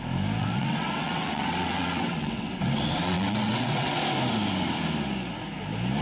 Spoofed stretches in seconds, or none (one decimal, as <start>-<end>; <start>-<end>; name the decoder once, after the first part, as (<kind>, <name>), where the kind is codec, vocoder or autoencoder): 0.4-4.0 (vocoder, WaveNeXt)